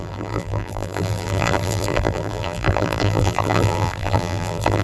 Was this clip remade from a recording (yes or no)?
yes